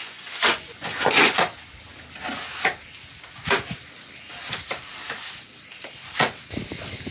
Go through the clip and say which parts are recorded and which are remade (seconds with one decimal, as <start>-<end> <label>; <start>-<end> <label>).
0.0-1.4 remade; 1.4-7.1 recorded